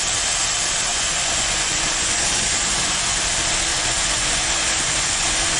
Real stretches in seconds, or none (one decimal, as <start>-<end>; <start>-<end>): 0.0-0.9; 3.2-3.7